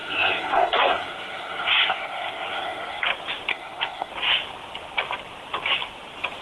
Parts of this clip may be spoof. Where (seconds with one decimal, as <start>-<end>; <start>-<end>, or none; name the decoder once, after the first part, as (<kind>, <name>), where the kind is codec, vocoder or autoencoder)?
0.0-3.0 (codec, SNAC); 3.5-4.1